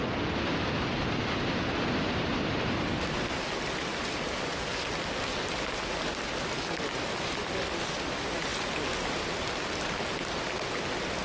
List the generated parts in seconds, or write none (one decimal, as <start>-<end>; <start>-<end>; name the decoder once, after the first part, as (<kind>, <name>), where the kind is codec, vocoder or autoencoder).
none